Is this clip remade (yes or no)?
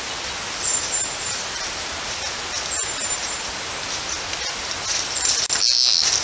no